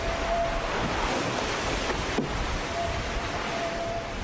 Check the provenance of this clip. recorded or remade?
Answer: recorded